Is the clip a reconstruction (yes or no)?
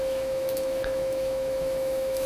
yes